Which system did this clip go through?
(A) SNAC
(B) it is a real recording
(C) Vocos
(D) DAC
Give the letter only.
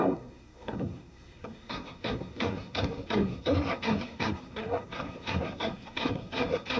A